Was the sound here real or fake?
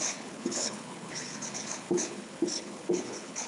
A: fake